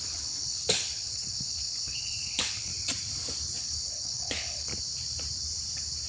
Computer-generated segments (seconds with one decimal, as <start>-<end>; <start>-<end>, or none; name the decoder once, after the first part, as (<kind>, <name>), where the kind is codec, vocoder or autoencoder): 0.0-2.7 (codec, HILCodec); 3.6-4.7